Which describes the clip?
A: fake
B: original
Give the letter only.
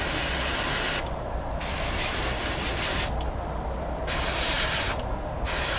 B